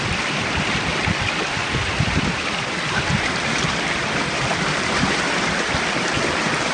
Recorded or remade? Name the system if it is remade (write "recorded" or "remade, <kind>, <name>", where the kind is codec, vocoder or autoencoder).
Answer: remade, vocoder, BigVGAN v2